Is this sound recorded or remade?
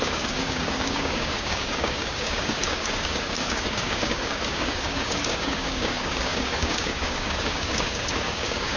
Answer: remade